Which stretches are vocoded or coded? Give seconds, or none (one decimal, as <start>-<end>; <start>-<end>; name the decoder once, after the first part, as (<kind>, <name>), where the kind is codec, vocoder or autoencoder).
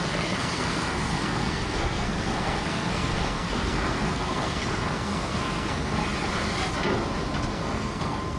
0.0-6.0 (codec, SNAC); 7.5-8.4